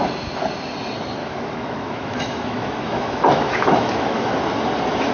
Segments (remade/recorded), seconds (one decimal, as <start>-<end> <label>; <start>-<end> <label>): 0.0-1.2 recorded; 1.2-4.3 remade; 4.3-5.1 recorded